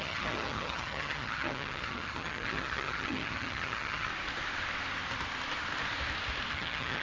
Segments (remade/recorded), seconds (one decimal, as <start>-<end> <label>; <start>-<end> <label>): 0.0-4.1 remade; 4.1-6.5 recorded; 6.5-7.0 remade